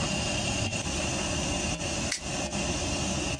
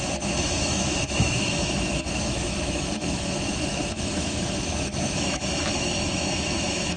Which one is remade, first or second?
second